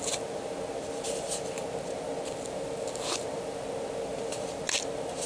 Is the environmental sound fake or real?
real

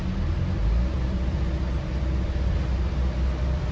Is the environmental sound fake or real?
real